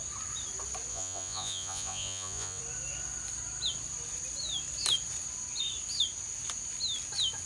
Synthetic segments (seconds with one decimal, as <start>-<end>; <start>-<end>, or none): 0.9-2.6